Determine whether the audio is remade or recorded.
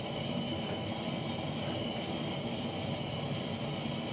recorded